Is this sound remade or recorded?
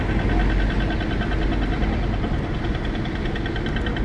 recorded